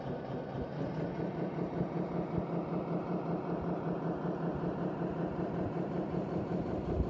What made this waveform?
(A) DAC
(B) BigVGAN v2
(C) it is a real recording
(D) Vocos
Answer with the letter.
B